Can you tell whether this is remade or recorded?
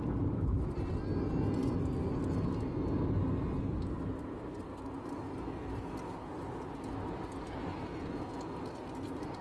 recorded